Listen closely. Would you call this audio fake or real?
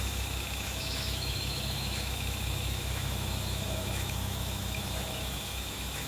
fake